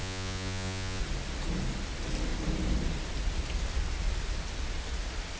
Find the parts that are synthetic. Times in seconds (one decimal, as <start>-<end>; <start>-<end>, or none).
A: 0.0-1.0